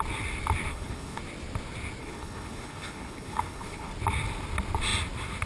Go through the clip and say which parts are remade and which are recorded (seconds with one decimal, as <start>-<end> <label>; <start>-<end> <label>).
0.0-0.7 recorded; 0.7-1.2 remade; 1.2-2.0 recorded; 2.0-3.9 remade; 3.9-5.5 recorded

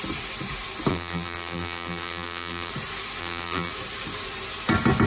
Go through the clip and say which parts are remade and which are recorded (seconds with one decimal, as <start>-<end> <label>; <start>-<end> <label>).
0.0-0.9 recorded; 0.9-2.7 remade; 2.7-3.2 recorded; 3.2-3.7 remade; 3.7-5.1 recorded

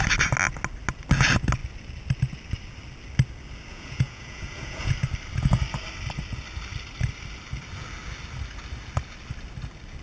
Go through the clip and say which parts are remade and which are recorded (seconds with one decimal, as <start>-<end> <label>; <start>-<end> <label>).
0.0-3.7 recorded; 3.7-4.9 remade; 4.9-10.0 recorded